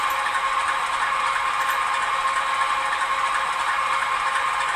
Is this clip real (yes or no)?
yes